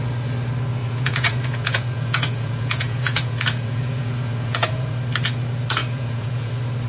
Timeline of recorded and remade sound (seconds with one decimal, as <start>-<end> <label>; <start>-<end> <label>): 0.0-0.8 recorded; 0.8-4.9 remade; 4.9-5.8 recorded; 5.8-6.5 remade; 6.5-6.9 recorded